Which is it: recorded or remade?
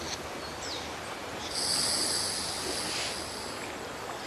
recorded